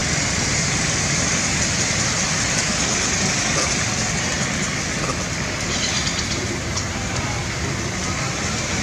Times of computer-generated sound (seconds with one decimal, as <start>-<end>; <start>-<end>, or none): none